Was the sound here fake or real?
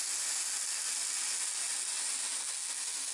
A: real